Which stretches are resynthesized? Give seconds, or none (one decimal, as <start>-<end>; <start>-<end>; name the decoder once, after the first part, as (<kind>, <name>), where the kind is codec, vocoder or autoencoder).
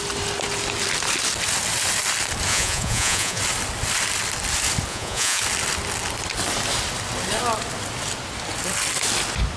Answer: 2.5-3.4 (vocoder, Vocos); 4.9-5.4